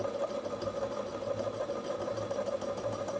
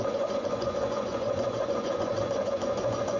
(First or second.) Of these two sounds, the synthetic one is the second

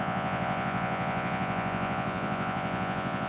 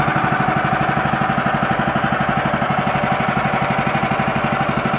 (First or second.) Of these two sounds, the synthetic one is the first